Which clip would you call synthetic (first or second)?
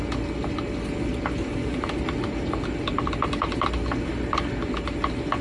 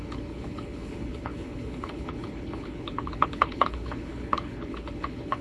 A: second